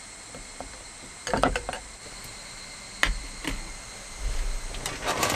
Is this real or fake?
real